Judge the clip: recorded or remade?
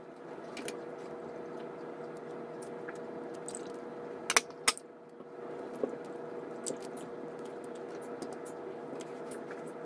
recorded